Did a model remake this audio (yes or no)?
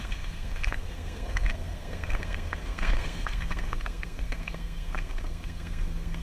yes